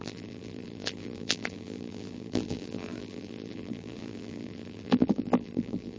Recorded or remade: remade